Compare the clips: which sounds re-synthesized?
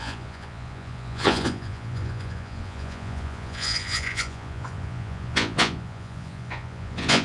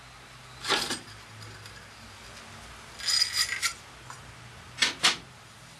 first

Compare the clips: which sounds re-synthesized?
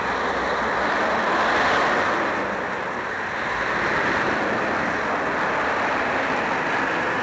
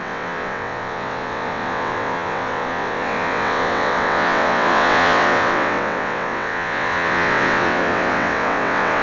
second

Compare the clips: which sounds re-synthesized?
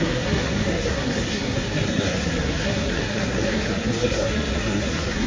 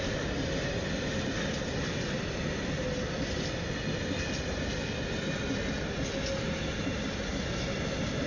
first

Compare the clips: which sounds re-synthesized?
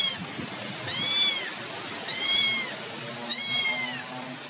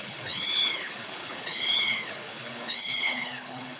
second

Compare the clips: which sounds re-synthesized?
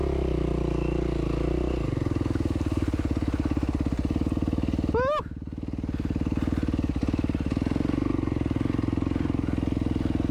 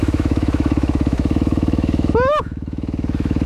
second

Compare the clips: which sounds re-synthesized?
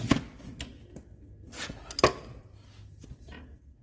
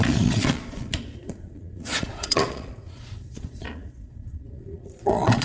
second